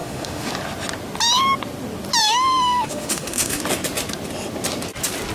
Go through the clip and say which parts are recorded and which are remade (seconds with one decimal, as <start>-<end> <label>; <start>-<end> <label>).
0.0-0.5 remade; 0.5-2.2 recorded; 2.2-3.6 remade; 3.6-5.3 recorded